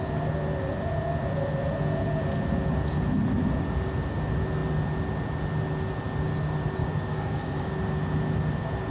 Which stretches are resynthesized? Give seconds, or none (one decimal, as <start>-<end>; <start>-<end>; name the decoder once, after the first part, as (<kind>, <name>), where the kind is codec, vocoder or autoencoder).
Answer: 6.8-7.7 (codec, DAC)